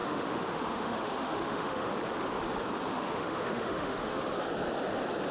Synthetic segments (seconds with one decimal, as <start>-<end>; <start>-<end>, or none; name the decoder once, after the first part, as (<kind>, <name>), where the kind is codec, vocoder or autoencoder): 0.0-1.9 (autoencoder, DAC-VAE); 2.9-4.2